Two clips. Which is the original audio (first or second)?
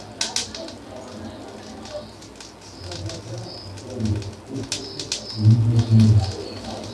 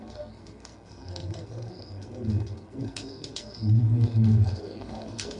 first